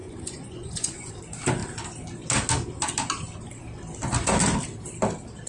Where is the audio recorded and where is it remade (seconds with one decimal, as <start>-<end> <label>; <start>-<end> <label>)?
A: 0.0-1.1 remade; 1.1-5.5 recorded